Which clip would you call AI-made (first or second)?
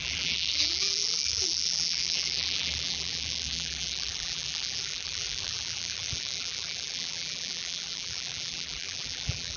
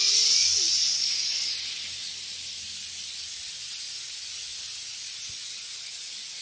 first